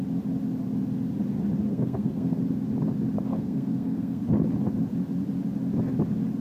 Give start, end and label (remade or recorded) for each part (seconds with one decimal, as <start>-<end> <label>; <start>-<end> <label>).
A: 0.0-1.7 recorded; 1.7-2.4 remade; 2.4-3.3 recorded; 3.3-4.4 remade; 4.4-6.4 recorded